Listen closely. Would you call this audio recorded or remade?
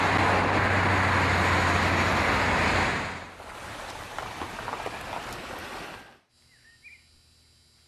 recorded